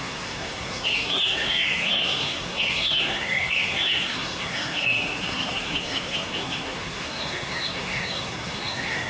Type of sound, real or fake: fake